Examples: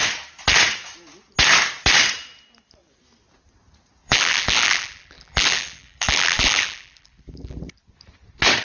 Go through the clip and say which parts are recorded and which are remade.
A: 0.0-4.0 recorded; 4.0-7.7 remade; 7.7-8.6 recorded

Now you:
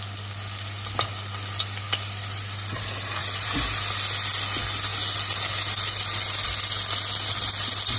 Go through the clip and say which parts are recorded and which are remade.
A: 0.0-3.2 recorded; 3.2-3.9 remade; 3.9-8.0 recorded

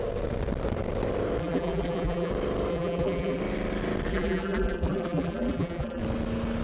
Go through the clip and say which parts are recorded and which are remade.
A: 0.0-1.4 recorded; 1.4-2.3 remade; 2.3-2.7 recorded; 2.7-3.4 remade; 3.4-4.1 recorded; 4.1-6.0 remade; 6.0-6.6 recorded